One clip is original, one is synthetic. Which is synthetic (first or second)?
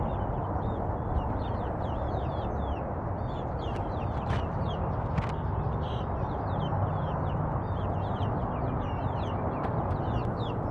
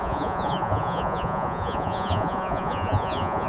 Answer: second